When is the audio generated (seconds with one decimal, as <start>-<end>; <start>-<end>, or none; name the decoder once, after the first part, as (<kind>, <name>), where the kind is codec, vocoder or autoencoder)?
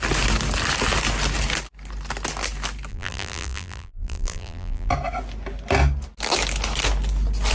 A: 2.9-4.9 (vocoder, BigVGAN v2)